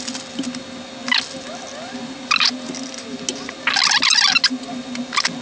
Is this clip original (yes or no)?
yes